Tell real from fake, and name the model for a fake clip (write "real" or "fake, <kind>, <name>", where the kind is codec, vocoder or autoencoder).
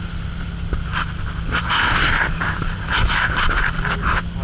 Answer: real